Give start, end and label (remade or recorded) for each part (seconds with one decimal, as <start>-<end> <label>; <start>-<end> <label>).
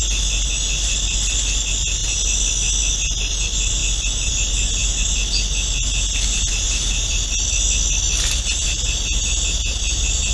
0.0-10.3 recorded